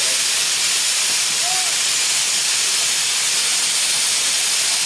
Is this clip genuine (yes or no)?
yes